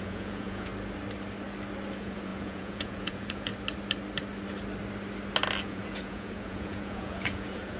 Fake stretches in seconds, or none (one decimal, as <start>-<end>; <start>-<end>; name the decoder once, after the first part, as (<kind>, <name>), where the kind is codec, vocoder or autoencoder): 0.0-0.7 (vocoder, Vocos); 1.9-3.5; 5.6-7.8